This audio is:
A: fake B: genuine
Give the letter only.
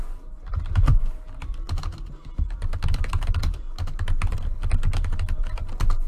B